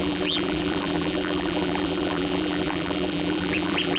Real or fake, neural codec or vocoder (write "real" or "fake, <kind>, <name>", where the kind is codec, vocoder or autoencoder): fake, vocoder, BigVGAN v2